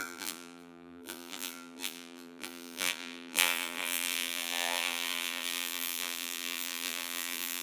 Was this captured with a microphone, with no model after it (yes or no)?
no